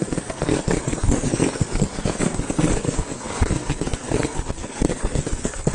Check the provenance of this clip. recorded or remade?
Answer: remade